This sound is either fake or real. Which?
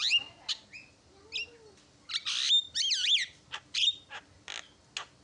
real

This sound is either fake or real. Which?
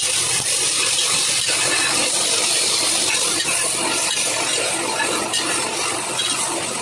real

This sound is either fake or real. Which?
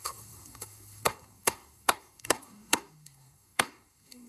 fake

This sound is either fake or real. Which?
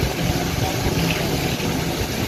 real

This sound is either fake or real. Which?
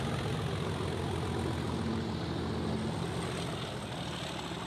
real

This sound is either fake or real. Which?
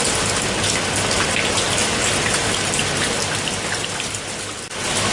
real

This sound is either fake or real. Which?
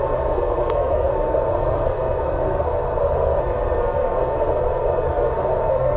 fake